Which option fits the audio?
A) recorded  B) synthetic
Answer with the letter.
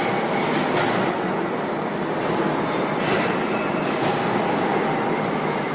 A